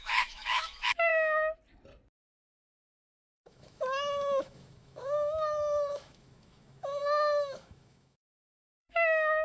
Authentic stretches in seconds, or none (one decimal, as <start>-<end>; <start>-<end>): 1.1-3.2